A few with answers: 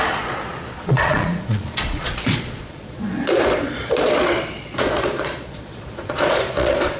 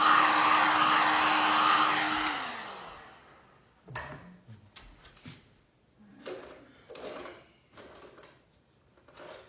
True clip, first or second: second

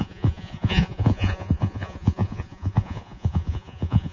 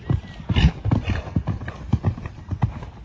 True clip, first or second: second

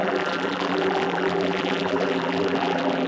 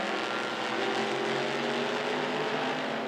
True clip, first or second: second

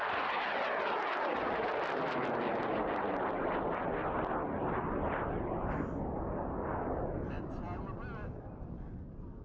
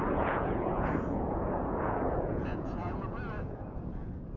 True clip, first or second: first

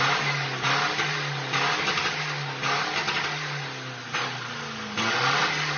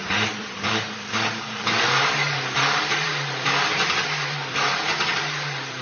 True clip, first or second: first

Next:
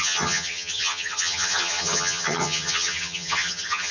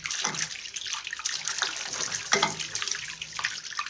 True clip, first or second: second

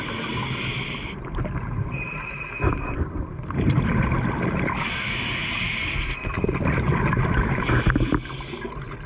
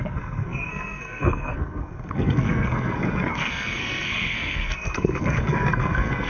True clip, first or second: first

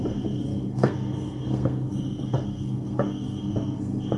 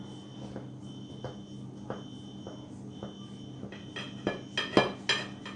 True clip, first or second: second